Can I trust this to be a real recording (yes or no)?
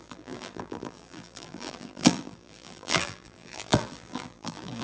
no